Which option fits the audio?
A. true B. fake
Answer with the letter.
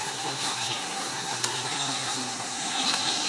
B